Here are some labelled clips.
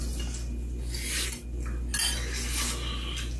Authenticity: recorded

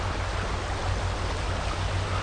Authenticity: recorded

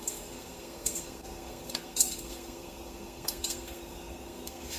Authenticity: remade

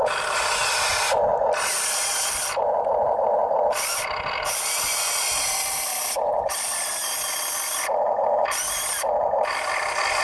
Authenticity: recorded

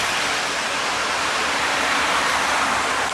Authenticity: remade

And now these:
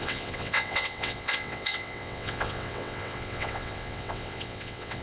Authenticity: remade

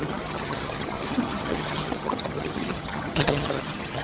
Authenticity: remade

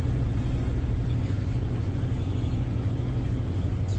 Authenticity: remade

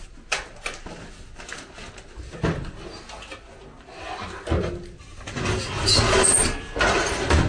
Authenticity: recorded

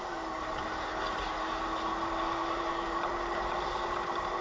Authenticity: recorded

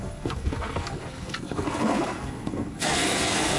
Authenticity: remade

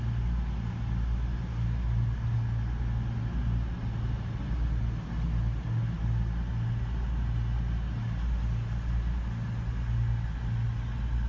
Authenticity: recorded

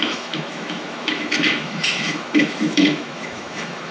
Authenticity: remade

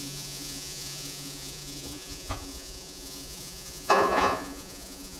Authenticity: remade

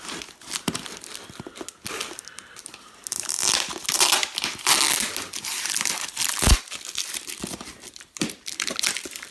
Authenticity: recorded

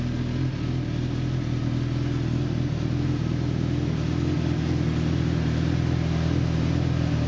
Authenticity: recorded